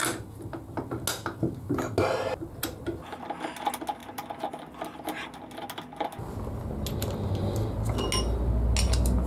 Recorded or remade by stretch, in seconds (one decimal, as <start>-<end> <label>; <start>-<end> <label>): 0.0-9.3 recorded